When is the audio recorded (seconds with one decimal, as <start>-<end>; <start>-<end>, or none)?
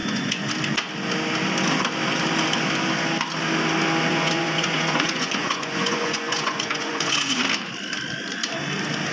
0.5-4.1; 7.4-9.1